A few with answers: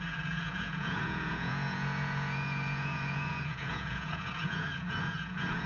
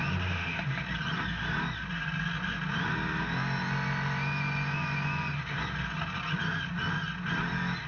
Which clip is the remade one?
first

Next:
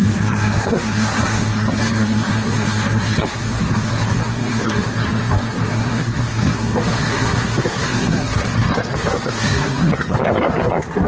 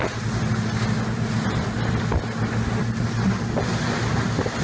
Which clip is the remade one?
first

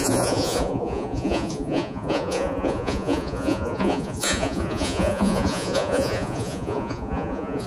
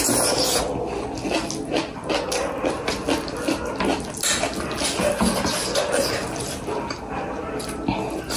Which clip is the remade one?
first